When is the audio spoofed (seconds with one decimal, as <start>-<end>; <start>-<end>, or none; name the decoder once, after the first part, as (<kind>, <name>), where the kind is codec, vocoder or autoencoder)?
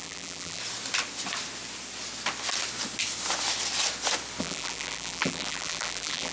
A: 0.0-0.6 (vocoder, BigVGAN v2); 4.4-6.3